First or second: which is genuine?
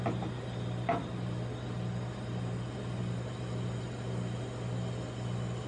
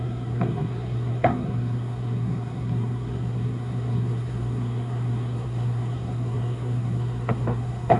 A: first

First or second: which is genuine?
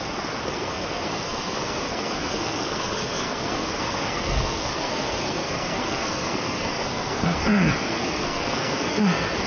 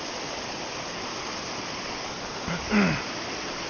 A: second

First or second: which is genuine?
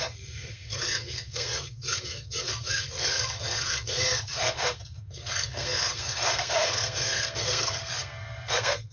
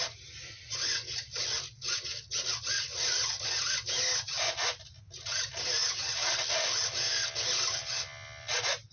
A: second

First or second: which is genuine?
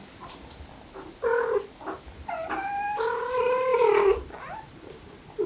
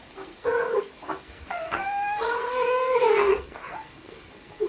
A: first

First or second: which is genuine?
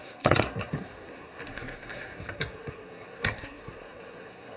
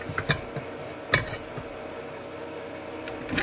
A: second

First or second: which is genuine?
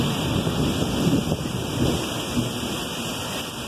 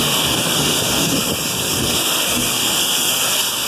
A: first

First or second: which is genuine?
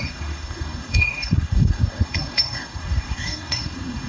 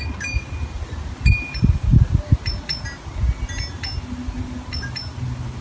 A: second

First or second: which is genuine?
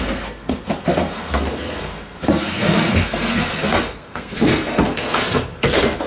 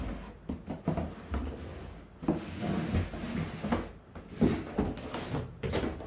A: second